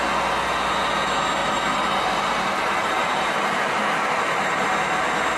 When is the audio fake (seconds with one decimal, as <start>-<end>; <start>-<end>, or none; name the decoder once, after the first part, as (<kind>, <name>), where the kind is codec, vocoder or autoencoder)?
1.4-4.6 (vocoder, BigVGAN v2)